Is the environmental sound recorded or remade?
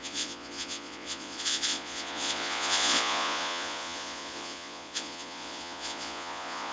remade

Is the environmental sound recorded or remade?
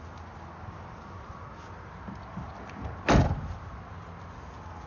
recorded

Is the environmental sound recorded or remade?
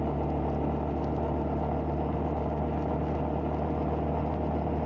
recorded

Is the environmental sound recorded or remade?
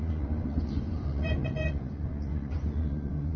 remade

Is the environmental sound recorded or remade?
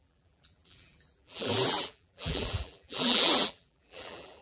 remade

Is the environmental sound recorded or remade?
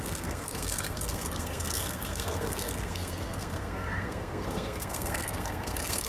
remade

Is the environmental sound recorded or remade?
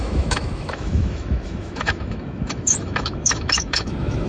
remade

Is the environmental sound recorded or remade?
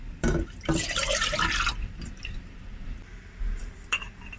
remade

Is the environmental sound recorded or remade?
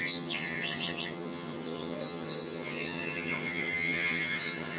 remade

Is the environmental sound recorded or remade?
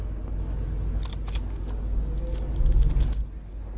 recorded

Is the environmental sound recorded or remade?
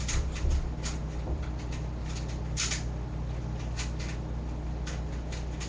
recorded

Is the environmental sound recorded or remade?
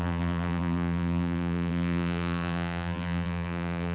remade